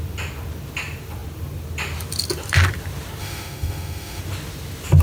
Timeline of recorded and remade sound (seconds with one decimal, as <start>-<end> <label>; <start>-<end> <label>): 0.0-3.2 recorded; 3.2-4.2 remade; 4.2-5.0 recorded

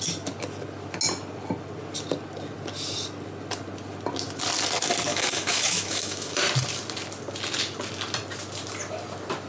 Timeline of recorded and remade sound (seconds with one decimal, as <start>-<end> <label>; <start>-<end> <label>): 0.0-5.1 recorded; 5.1-6.4 remade; 6.4-9.5 recorded

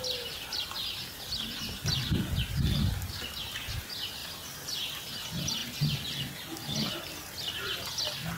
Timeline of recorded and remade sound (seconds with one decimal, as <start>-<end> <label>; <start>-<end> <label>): 0.0-8.4 recorded

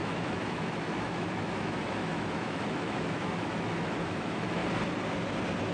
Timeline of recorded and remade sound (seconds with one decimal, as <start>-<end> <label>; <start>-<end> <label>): 0.0-4.6 remade; 4.6-5.7 recorded

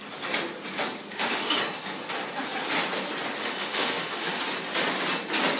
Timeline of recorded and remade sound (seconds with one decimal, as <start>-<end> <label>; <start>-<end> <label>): 0.0-1.1 recorded; 1.1-1.6 remade; 1.6-3.4 recorded; 3.4-4.4 remade; 4.4-5.6 recorded